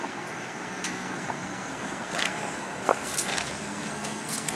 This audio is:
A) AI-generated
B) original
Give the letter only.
A